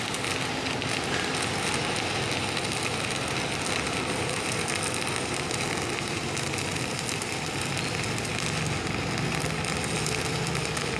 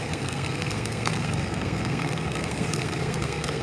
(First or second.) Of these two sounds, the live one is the first